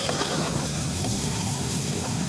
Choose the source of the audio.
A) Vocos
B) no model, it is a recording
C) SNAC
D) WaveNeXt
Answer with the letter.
C